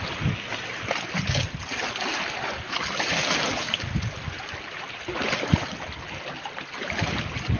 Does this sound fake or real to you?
real